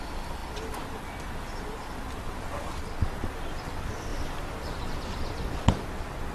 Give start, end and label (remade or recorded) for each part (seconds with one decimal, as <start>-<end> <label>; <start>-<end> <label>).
0.0-4.1 recorded; 4.1-4.8 remade; 4.8-6.3 recorded